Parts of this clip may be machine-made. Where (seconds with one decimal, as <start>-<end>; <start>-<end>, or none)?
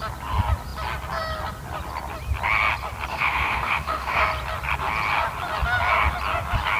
3.1-4.2